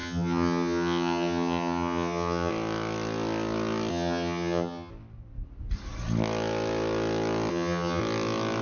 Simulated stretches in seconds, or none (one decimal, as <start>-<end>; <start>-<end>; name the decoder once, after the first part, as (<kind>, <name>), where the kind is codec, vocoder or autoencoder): 0.0-2.5 (vocoder, HiFi-GAN); 3.9-4.9; 7.5-8.0